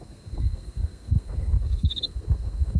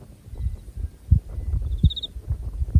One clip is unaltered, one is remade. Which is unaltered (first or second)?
second